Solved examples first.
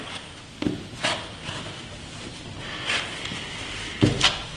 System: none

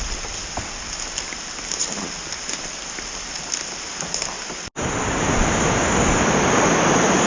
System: none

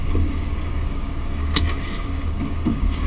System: codec, DAC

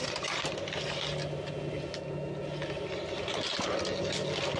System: none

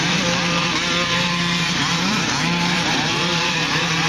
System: vocoder, BigVGAN v2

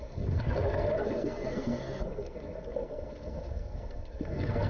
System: codec, SNAC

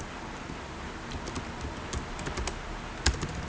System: none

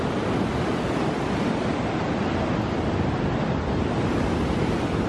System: none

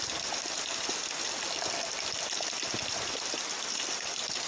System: none